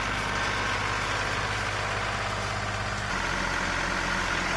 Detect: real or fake real